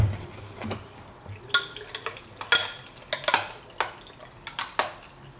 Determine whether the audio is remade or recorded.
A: recorded